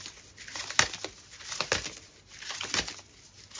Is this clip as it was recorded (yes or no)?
yes